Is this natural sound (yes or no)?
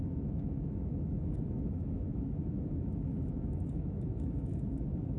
no